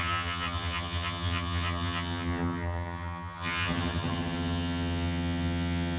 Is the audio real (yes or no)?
no